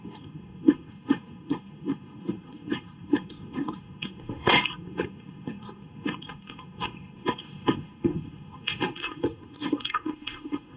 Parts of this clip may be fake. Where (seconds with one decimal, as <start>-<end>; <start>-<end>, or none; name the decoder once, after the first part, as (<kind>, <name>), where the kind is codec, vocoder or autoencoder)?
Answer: 0.0-10.8 (codec, SNAC)